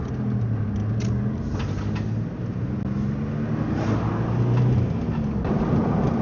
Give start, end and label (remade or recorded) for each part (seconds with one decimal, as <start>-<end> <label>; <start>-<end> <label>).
0.0-6.2 recorded